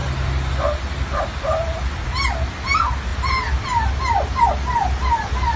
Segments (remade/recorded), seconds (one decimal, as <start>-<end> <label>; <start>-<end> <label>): 0.0-5.6 recorded